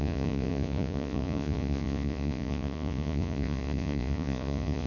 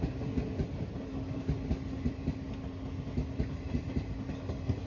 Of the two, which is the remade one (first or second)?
first